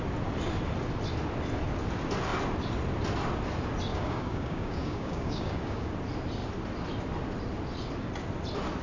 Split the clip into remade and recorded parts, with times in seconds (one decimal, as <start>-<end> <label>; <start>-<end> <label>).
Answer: 0.0-3.9 recorded; 3.9-5.9 remade; 5.9-8.8 recorded